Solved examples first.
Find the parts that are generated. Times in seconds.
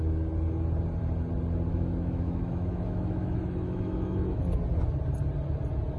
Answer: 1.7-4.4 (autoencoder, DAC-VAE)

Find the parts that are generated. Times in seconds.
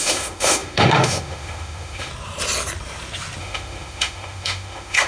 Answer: 0.0-2.1 (autoencoder, DAC-VAE); 3.4-5.1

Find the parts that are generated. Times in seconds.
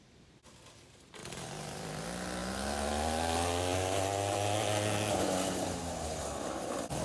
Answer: none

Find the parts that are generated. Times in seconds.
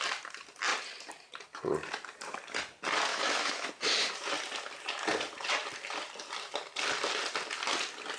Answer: 3.1-3.7 (autoencoder, DAC-VAE)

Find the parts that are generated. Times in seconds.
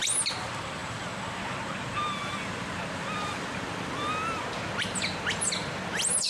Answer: none